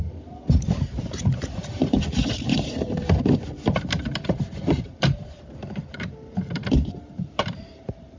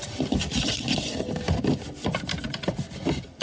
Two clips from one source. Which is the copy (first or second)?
first